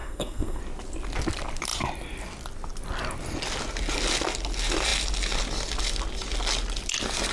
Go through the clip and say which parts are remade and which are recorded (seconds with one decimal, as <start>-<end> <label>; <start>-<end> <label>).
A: 0.0-0.6 remade; 0.6-7.3 recorded